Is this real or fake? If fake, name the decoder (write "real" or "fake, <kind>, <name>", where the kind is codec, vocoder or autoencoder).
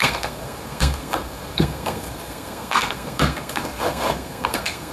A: fake, codec, SNAC